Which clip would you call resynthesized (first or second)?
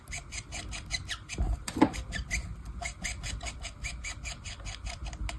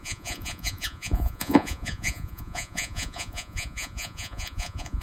second